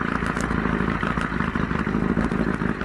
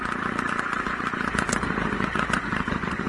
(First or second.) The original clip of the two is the first